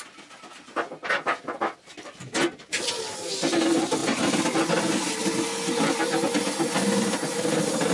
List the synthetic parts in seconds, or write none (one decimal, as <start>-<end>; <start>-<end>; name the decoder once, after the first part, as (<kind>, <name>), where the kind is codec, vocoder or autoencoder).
none